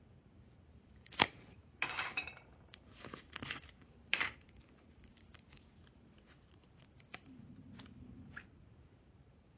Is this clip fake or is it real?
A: fake